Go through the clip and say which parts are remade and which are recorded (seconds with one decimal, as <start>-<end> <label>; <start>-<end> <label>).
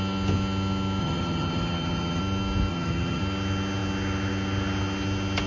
0.0-1.0 recorded; 1.0-2.2 remade; 2.2-2.7 recorded; 2.7-3.2 remade; 3.2-5.5 recorded